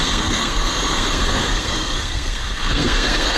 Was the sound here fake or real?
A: fake